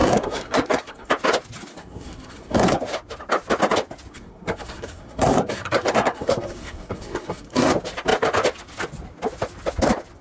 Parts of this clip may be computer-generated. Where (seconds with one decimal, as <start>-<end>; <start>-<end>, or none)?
0.0-1.1; 1.7-2.8; 4.1-7.7